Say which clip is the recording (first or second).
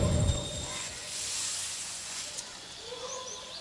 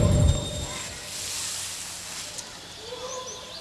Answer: second